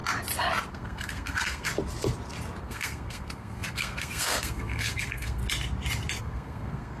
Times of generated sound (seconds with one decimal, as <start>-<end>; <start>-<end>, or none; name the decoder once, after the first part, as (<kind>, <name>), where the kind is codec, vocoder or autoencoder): 0.7-1.7 (codec, SNAC); 2.6-5.4; 6.2-7.0